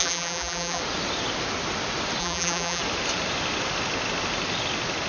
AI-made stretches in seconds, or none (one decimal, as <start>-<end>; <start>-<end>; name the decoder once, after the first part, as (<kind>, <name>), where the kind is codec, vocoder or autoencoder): 0.0-0.8 (vocoder, BigVGAN v2); 2.2-2.8